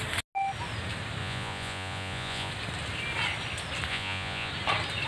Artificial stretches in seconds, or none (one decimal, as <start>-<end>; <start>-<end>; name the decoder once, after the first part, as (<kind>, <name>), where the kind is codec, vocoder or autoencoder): 1.2-2.5 (vocoder, Vocos); 3.9-4.5